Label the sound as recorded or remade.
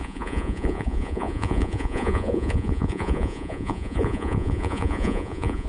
remade